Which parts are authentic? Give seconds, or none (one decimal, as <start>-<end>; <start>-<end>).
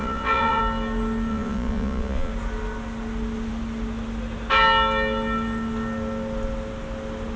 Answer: 0.6-1.3; 2.3-7.4